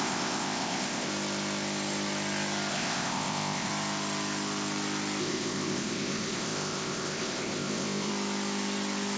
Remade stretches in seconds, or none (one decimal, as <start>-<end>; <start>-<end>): 0.0-1.1; 2.7-3.7; 5.2-8.1